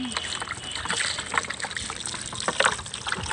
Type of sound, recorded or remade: recorded